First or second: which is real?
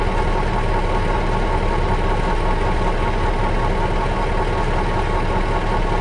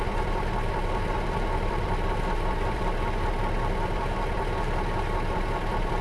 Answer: first